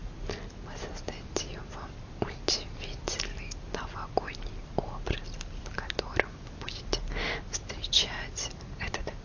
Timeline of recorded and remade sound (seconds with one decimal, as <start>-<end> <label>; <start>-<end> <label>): 0.0-9.2 recorded